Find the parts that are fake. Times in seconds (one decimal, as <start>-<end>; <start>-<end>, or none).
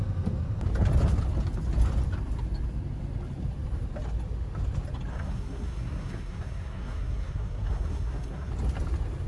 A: 5.1-8.5